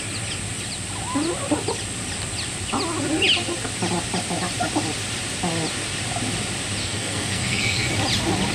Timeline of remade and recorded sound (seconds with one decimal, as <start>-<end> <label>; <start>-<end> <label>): 0.0-6.8 recorded; 6.8-7.9 remade; 7.9-8.5 recorded